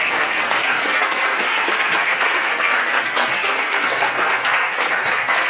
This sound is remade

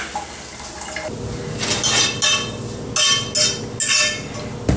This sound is recorded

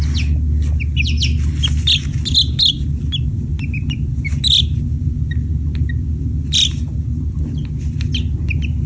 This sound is recorded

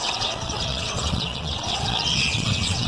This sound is remade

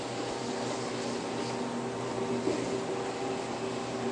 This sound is recorded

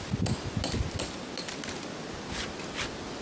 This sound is recorded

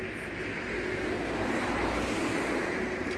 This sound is recorded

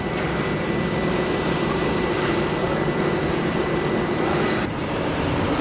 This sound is recorded